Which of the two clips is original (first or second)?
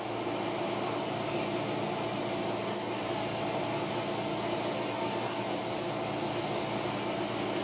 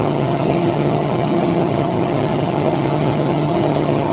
first